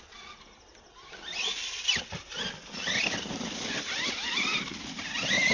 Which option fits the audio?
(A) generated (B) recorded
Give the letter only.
B